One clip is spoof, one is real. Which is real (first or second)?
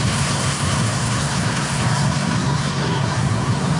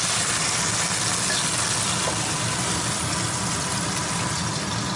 second